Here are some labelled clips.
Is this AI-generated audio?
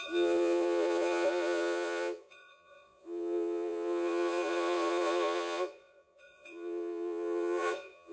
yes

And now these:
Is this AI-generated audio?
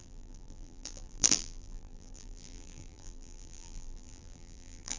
yes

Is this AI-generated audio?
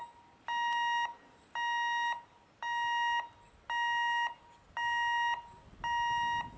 no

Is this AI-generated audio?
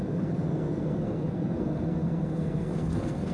yes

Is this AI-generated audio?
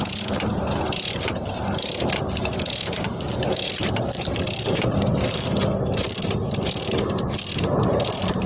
yes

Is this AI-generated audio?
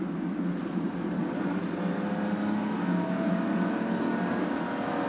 no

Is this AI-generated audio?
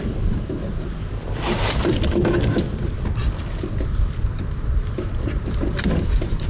yes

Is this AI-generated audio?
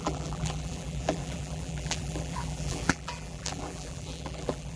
yes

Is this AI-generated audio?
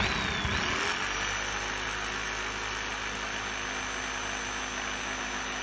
no